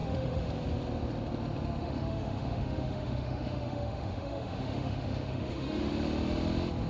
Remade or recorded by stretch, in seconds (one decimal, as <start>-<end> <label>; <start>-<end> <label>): 0.0-0.5 remade; 0.5-1.8 recorded; 1.8-5.9 remade; 5.9-6.9 recorded